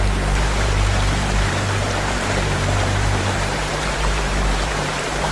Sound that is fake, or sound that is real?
fake